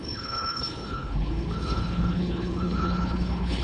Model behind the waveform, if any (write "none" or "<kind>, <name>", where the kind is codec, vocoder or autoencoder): codec, HILCodec